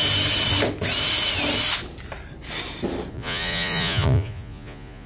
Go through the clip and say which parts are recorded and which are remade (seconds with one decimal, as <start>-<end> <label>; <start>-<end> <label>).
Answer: 0.0-3.1 recorded; 3.1-5.1 remade